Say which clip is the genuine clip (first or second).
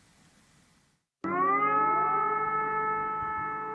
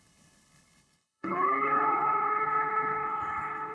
first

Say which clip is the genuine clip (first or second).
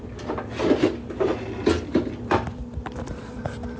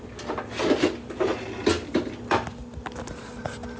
second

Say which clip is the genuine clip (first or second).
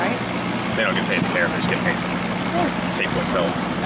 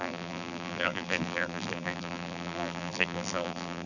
first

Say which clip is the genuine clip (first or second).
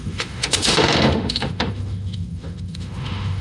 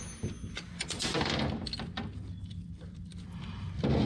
second